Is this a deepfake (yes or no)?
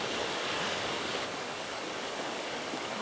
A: yes